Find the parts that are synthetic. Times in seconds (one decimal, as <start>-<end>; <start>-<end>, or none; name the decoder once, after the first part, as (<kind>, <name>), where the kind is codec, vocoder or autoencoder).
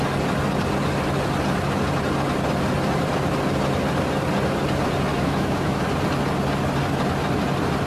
5.1-5.8 (autoencoder, DAC-VAE)